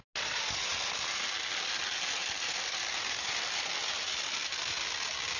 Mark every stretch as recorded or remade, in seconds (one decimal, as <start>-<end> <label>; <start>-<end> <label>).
0.0-5.4 recorded